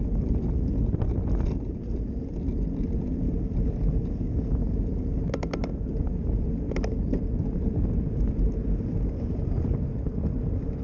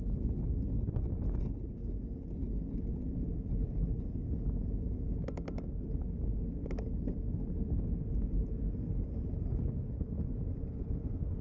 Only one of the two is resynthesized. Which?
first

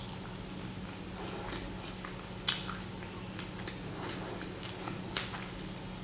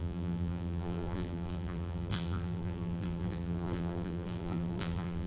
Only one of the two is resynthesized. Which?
second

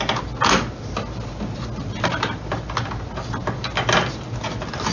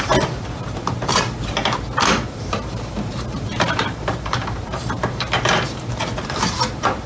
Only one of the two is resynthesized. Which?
second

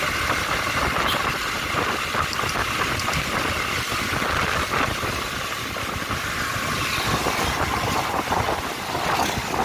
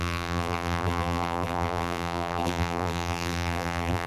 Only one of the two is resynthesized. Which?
second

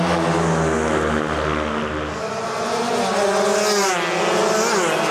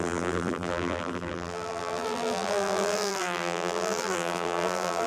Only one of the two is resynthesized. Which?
second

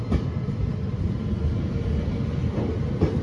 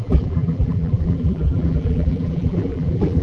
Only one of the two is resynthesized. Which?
second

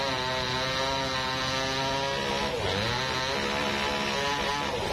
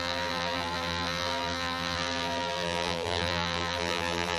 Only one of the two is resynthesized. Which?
second